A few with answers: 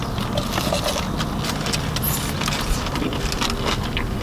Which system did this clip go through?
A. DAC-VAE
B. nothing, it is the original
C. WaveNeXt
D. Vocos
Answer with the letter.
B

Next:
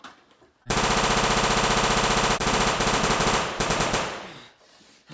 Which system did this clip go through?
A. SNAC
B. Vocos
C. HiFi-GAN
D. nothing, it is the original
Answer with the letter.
D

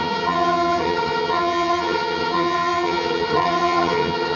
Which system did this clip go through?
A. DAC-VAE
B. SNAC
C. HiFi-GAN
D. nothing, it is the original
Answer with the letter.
C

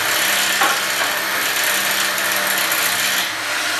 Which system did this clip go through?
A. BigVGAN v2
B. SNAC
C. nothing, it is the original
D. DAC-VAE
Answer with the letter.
C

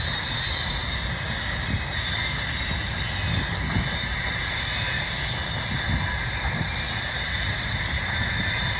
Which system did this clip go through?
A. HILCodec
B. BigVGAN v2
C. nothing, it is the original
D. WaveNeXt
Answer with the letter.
C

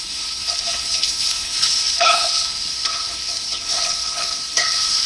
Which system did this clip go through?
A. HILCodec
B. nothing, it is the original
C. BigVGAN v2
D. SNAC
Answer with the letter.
A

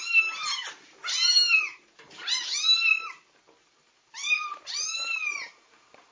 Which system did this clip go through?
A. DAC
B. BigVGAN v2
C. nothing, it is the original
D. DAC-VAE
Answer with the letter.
B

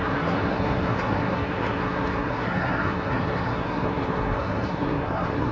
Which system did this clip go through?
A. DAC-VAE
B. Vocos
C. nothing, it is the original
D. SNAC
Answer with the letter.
D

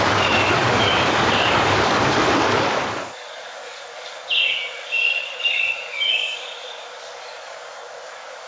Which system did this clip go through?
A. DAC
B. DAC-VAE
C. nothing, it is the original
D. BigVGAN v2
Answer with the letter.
A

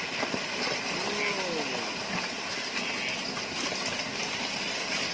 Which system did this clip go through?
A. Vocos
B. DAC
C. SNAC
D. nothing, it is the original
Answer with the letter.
D